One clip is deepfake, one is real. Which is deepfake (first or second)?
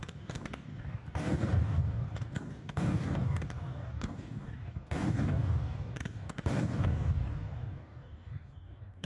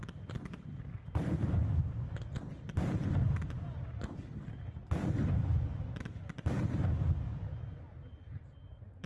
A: first